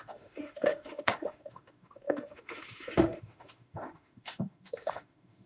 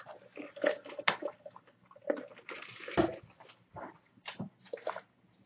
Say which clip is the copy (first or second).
first